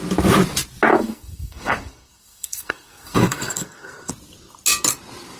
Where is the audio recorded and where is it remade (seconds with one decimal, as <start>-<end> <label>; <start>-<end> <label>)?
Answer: 0.0-0.9 recorded; 0.9-4.1 remade; 4.1-5.4 recorded